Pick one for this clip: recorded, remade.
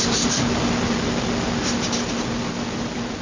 recorded